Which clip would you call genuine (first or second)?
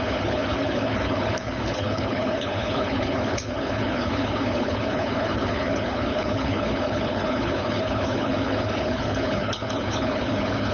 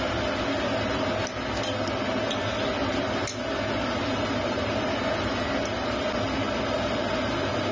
second